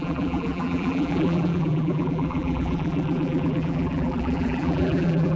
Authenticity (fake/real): fake